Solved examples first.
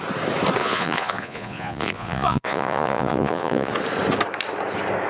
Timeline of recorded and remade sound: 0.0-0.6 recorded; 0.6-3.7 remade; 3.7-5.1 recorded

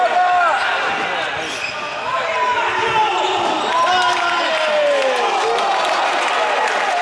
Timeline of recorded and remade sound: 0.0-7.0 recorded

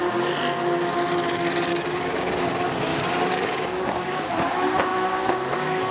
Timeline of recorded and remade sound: 0.0-1.7 recorded; 1.7-2.5 remade; 2.5-2.9 recorded; 2.9-4.3 remade; 4.3-5.9 recorded